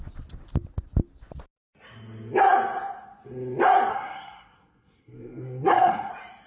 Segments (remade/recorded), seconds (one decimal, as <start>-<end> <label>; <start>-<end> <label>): 0.0-3.9 recorded; 3.9-6.1 remade; 6.1-6.5 recorded